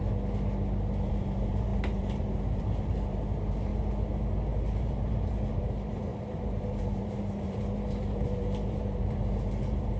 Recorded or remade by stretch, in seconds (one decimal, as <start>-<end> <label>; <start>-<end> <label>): 0.0-1.1 recorded; 1.1-3.7 remade; 3.7-4.8 recorded; 4.8-10.0 remade